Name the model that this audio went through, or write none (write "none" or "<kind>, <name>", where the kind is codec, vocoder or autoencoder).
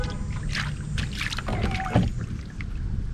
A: none